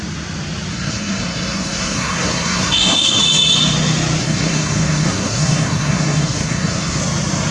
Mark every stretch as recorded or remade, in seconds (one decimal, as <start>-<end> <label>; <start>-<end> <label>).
0.0-0.7 recorded; 0.7-3.2 remade; 3.2-4.2 recorded; 4.2-7.0 remade; 7.0-7.5 recorded